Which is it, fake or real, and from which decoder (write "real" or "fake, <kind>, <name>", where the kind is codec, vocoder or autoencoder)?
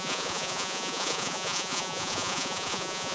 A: fake, vocoder, Vocos